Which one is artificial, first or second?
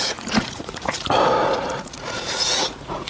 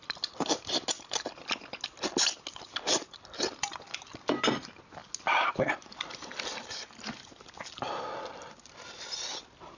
first